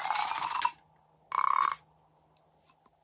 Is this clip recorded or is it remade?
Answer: recorded